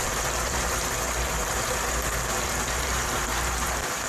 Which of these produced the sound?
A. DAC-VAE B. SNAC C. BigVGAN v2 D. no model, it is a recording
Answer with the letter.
C